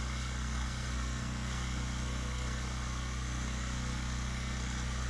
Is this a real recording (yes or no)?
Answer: no